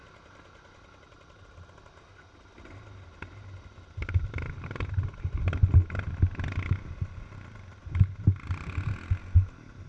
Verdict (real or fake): real